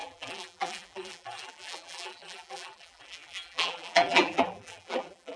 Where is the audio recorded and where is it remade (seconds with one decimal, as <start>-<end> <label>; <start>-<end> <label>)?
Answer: 0.0-5.4 remade